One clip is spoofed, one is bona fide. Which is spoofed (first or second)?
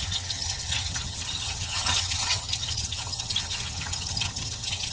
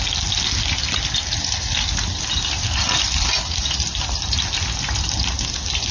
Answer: first